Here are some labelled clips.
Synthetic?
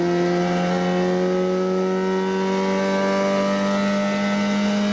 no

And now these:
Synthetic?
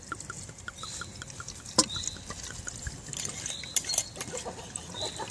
no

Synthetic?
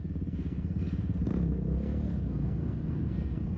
yes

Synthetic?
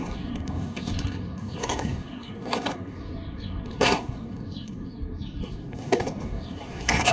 yes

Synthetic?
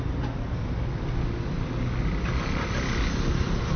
no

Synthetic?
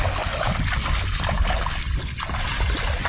no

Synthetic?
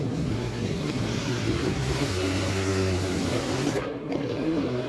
yes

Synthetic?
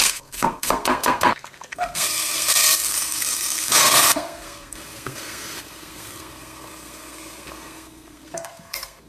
yes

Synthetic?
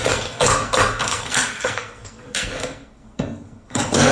yes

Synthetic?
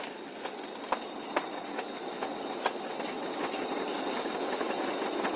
no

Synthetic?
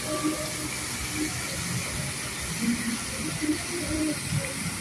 no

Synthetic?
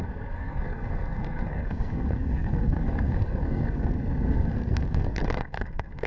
yes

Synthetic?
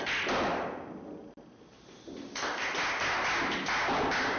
no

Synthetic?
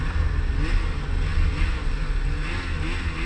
no